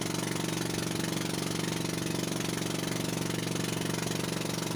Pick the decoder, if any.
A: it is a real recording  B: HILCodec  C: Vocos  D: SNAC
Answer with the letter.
A